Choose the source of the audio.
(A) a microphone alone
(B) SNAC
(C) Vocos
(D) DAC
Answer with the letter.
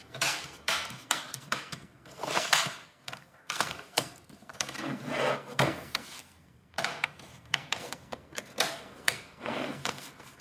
B